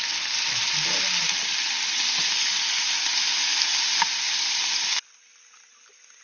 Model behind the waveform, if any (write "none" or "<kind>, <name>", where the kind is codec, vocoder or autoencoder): none